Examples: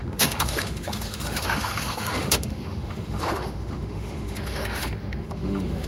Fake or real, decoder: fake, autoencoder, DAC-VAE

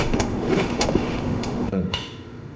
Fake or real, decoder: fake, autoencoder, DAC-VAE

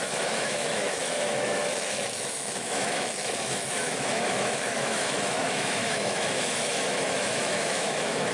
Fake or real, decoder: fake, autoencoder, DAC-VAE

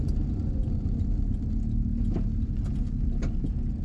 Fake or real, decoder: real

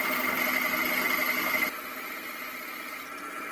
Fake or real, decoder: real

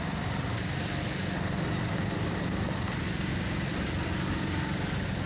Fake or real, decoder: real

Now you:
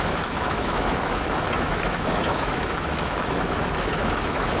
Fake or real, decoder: fake, autoencoder, DAC-VAE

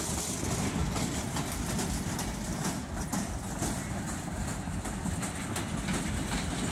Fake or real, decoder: real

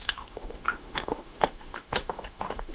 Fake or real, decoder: fake, autoencoder, DAC-VAE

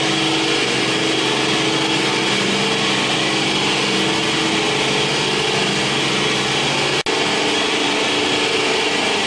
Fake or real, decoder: real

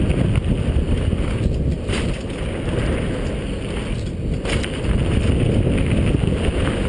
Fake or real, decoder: real